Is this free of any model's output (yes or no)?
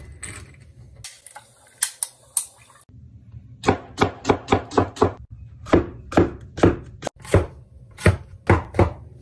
yes